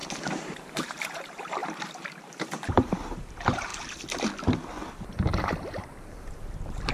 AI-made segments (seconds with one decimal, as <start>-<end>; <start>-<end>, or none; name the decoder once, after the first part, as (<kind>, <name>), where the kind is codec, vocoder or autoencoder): 0.0-1.6 (vocoder, BigVGAN v2); 2.4-3.7; 5.3-6.9